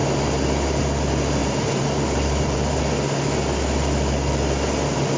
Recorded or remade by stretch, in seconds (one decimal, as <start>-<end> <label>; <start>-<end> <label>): 0.0-1.4 recorded; 1.4-2.8 remade; 2.8-5.2 recorded